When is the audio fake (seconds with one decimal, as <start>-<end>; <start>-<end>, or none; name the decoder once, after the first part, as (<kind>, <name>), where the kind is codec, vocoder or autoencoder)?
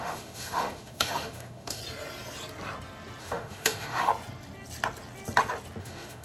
0.0-1.8 (autoencoder, DAC-VAE); 3.2-4.1; 5.8-6.2